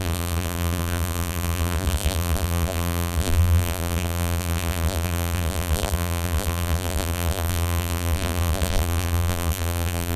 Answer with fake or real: fake